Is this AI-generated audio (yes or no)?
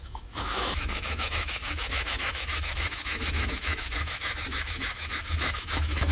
yes